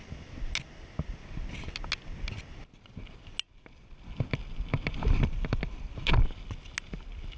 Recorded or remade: recorded